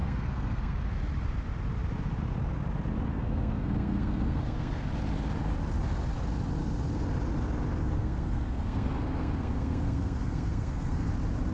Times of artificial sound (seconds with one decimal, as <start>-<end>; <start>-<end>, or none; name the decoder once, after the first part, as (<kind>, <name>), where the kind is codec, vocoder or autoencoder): 0.0-0.9 (codec, SNAC); 3.1-4.9; 7.8-11.1